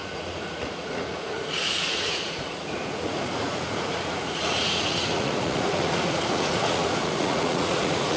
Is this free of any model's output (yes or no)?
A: no